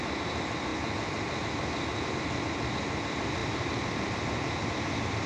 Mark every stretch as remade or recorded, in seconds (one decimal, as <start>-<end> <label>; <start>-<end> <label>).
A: 0.0-5.3 recorded